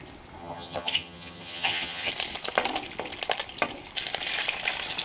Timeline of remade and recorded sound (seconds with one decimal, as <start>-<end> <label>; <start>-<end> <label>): 0.0-0.4 recorded; 0.4-2.1 remade; 2.1-5.0 recorded